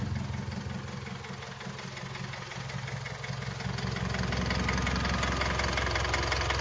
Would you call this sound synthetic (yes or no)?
no